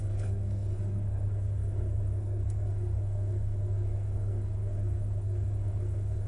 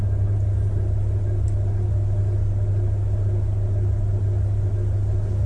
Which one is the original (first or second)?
second